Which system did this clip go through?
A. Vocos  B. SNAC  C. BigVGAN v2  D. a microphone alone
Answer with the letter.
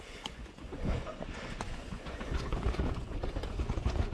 A